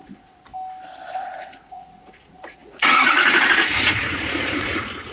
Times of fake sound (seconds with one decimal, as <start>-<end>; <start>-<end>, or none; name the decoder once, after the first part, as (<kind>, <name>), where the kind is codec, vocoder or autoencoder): 0.0-0.5 (vocoder, Vocos); 1.2-5.1

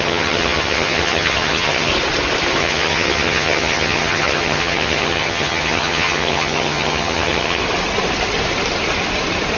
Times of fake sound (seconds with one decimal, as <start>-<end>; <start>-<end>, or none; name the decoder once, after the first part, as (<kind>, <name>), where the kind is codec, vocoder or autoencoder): 0.0-1.9 (vocoder, HiFi-GAN); 2.6-7.6

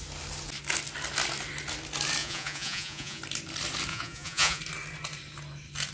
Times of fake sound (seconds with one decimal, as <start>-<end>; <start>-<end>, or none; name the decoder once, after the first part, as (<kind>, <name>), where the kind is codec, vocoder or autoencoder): 2.2-3.2 (vocoder, Vocos); 3.9-4.6

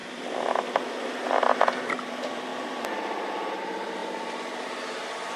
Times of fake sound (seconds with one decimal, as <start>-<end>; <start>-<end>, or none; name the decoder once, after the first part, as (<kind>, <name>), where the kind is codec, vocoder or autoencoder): 0.9-5.4 (vocoder, BigVGAN v2)

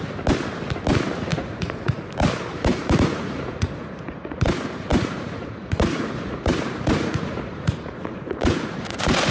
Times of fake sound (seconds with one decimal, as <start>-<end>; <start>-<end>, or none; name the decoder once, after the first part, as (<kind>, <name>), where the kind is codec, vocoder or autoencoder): 1.3-2.0 (vocoder, Vocos); 2.7-4.5; 4.9-9.3

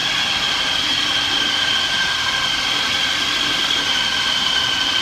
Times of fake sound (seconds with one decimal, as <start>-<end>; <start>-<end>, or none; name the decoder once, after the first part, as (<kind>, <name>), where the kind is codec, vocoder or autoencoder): none

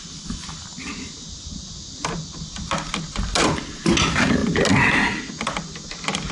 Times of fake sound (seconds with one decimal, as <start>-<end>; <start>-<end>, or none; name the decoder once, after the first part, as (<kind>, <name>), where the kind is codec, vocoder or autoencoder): none